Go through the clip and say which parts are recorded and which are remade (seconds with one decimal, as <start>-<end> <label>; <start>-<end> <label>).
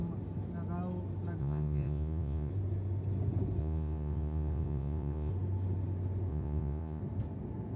0.0-1.4 recorded; 1.4-2.5 remade; 2.5-3.6 recorded; 3.6-5.3 remade; 5.3-6.3 recorded; 6.3-7.0 remade; 7.0-7.8 recorded